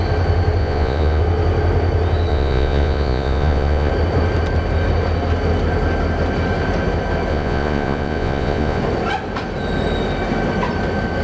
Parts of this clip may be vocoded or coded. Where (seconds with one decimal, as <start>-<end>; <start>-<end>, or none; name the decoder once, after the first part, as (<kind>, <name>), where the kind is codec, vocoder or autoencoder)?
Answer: 0.6-1.2 (vocoder, Vocos); 2.3-3.9; 7.3-8.8